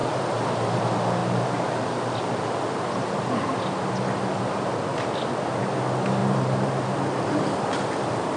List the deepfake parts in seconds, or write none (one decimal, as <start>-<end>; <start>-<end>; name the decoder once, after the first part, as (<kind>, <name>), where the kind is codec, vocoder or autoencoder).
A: 1.2-2.2 (vocoder, BigVGAN v2); 6.2-7.3